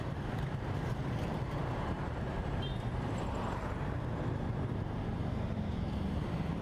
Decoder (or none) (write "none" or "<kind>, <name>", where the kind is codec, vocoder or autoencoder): vocoder, BigVGAN v2